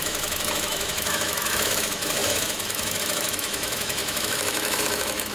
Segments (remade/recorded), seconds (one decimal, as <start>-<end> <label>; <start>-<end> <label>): 0.0-5.3 remade